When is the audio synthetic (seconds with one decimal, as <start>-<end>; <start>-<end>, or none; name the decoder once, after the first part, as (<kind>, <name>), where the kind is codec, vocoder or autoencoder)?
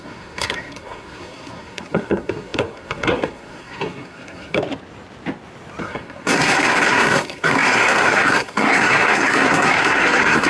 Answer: 0.0-4.6 (codec, SNAC); 5.8-10.5